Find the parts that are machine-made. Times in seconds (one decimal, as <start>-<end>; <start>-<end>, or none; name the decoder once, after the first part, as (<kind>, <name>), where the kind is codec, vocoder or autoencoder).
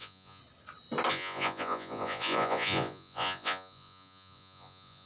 0.0-0.4 (vocoder, Vocos); 1.1-5.1